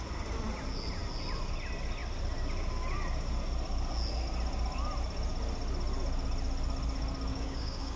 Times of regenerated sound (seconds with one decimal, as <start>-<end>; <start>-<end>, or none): 7.3-8.0